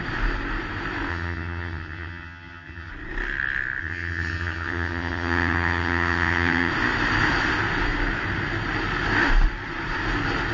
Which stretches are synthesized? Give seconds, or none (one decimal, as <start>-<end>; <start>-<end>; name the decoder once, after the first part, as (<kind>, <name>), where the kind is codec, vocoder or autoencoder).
1.1-2.9 (vocoder, HiFi-GAN); 3.8-6.7